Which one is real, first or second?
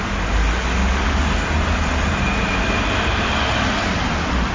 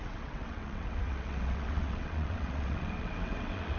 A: first